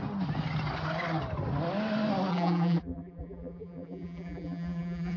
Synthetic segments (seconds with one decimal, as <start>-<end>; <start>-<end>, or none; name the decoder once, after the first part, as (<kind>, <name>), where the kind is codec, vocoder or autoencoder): 2.3-5.2 (vocoder, BigVGAN v2)